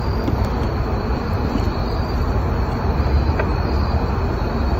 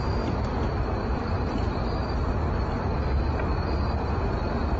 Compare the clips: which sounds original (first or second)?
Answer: first